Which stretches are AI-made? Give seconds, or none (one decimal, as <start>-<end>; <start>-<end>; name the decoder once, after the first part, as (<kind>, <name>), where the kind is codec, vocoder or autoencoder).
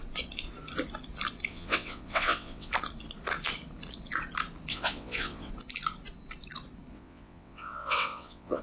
1.5-2.7 (vocoder, WaveNeXt); 4.7-5.5; 6.9-8.6